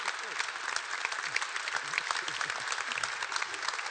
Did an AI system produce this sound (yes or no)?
no